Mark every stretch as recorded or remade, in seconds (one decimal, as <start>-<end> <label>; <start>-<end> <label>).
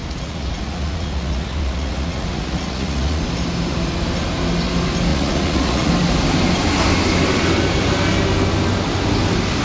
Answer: 0.0-3.2 remade; 3.2-5.1 recorded; 5.1-5.9 remade; 5.9-9.6 recorded